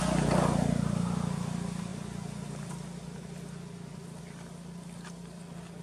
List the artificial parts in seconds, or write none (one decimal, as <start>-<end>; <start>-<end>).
none